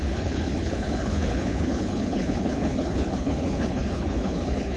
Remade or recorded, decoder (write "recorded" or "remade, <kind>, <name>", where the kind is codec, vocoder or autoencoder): remade, codec, HILCodec